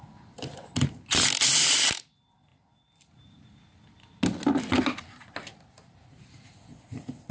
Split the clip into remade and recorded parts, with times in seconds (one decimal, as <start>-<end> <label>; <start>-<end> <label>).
0.0-7.3 recorded